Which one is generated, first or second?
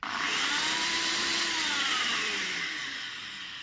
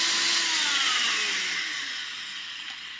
first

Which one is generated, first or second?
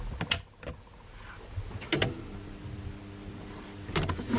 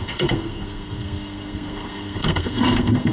second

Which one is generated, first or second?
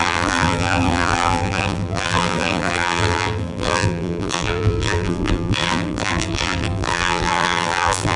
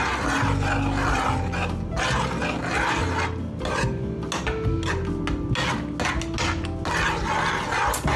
first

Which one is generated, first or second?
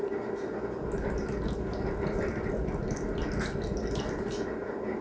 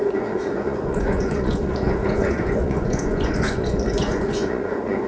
second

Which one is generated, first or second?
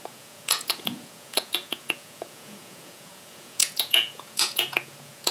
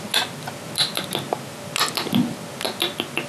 first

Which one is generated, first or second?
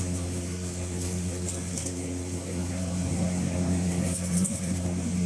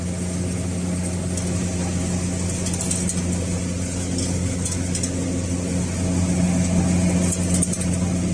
first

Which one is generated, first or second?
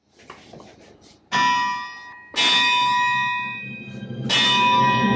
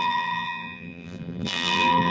second